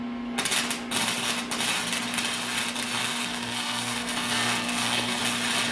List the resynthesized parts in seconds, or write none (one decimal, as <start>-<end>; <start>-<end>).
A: 3.0-5.2